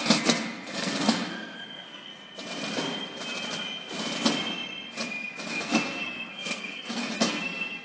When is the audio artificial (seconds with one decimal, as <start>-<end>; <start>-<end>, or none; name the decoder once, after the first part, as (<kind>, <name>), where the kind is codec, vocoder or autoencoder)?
0.0-2.1 (codec, SNAC); 5.5-7.8